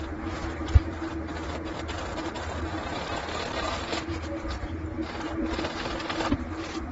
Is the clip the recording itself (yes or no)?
no